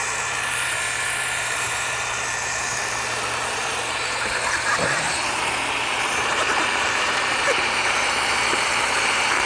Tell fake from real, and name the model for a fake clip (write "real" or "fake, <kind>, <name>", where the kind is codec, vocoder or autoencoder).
fake, vocoder, BigVGAN v2